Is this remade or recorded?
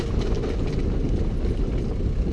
recorded